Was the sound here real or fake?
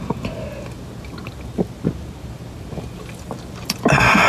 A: real